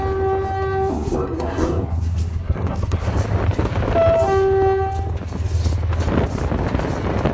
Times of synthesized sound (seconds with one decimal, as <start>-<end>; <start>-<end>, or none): 0.9-3.1